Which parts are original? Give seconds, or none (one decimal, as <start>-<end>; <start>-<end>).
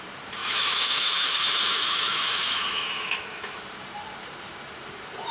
0.0-0.4; 3.6-5.3